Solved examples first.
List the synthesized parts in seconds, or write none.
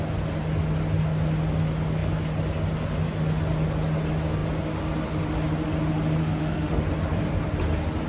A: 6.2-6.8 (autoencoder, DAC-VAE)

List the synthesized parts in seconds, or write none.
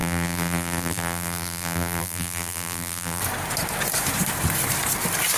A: 0.0-3.2 (vocoder, BigVGAN v2)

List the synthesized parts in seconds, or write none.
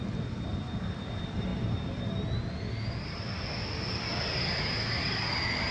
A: none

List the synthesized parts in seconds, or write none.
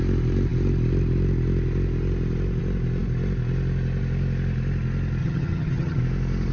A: 5.2-6.0 (vocoder, HiFi-GAN)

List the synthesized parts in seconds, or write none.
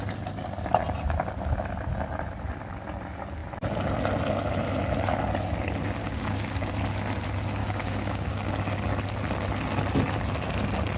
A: 6.0-6.7 (codec, DAC); 7.6-8.5